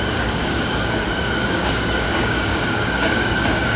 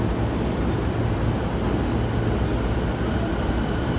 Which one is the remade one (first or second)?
first